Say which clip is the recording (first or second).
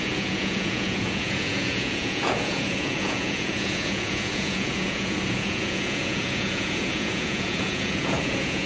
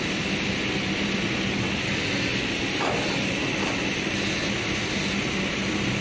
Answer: second